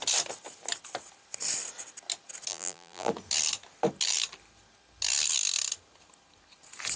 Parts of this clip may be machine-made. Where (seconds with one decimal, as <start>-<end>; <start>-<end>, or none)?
2.5-3.1